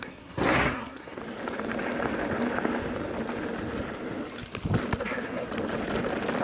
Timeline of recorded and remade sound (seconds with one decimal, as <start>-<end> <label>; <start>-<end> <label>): 0.0-1.2 remade; 1.2-5.0 recorded; 5.0-5.5 remade; 5.5-6.4 recorded